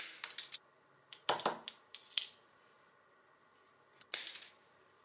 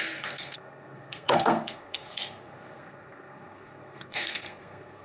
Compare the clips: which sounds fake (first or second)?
second